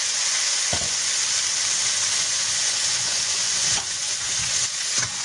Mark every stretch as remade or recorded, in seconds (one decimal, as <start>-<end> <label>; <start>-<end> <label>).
0.0-1.2 remade; 1.2-2.2 recorded; 2.2-5.2 remade